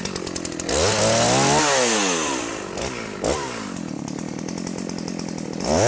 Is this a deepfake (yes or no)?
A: no